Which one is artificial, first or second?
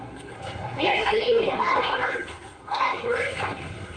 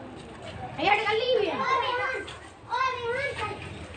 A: first